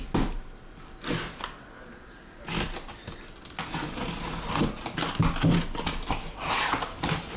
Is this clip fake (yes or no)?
no